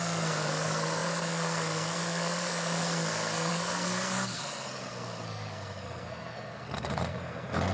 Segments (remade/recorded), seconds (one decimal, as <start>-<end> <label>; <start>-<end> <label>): 0.0-7.7 remade